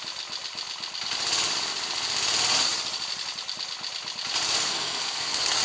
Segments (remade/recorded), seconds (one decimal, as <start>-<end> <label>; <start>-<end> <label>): 0.0-4.7 recorded; 4.7-5.6 remade